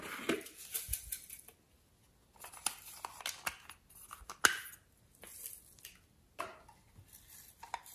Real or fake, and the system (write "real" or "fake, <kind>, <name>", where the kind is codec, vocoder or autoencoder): real